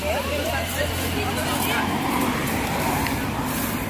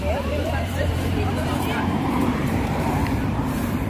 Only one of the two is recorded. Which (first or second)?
first